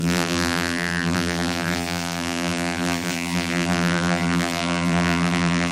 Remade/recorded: remade